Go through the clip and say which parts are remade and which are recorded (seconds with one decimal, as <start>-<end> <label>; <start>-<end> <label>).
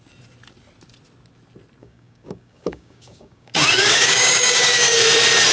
0.0-1.8 recorded; 1.8-5.0 remade; 5.0-5.5 recorded